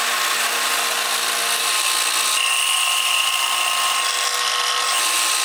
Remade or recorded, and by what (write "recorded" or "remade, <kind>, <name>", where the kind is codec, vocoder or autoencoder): recorded